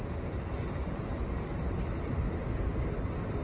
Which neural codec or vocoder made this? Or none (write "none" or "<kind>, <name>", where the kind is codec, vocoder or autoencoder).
none